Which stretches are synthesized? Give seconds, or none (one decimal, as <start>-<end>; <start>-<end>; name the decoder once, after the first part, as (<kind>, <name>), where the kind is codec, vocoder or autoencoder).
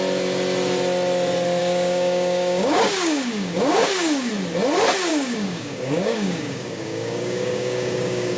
1.6-4.3 (codec, DAC); 5.1-8.4